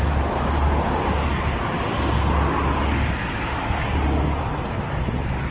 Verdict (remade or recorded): recorded